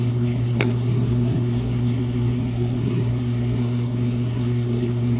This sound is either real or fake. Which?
fake